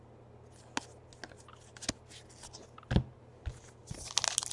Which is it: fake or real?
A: real